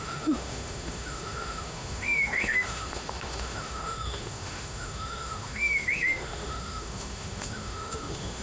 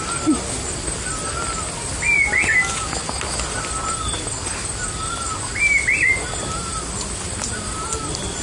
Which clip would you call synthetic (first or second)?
first